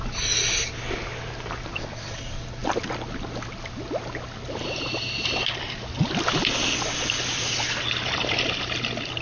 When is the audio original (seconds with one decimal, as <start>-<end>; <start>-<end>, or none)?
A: 0.0-1.7; 2.2-9.2